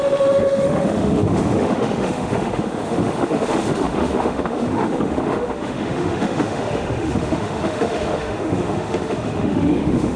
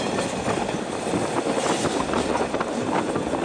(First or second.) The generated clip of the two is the first